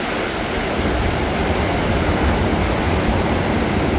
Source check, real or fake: real